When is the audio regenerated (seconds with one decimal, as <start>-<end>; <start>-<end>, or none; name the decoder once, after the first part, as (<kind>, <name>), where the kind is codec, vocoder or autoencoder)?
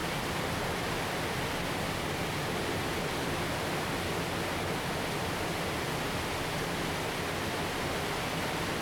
none